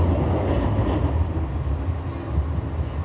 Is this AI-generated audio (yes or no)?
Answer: no